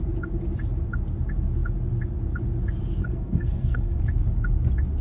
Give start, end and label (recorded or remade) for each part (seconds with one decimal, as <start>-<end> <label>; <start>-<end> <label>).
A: 0.0-3.0 recorded; 3.0-4.0 remade; 4.0-5.0 recorded